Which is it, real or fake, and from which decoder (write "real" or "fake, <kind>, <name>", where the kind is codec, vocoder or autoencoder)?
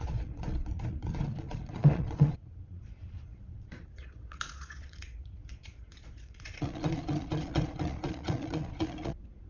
fake, vocoder, Vocos